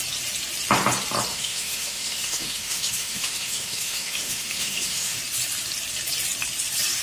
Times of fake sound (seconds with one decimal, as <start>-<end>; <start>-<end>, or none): 1.3-5.2